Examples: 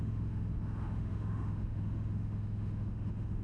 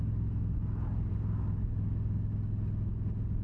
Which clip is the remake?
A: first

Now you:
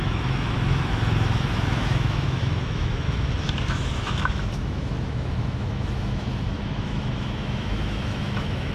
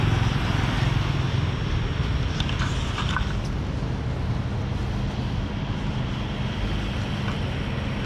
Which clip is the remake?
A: first